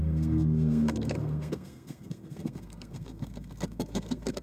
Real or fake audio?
fake